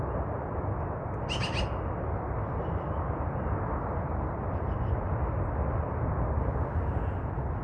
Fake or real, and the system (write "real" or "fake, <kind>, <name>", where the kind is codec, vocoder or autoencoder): real